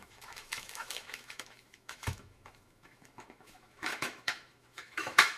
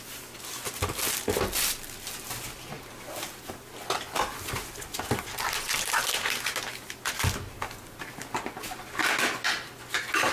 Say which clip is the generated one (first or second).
first